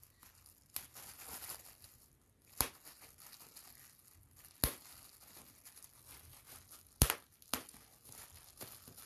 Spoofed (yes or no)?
no